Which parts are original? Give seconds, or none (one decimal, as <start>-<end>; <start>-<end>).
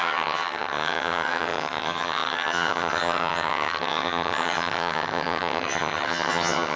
none